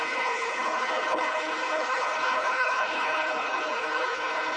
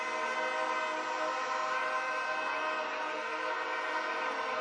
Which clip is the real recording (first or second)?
second